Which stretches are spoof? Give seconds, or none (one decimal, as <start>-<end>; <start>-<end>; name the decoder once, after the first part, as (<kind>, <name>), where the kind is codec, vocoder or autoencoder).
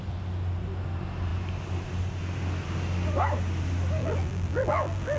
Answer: 4.0-5.2 (vocoder, BigVGAN v2)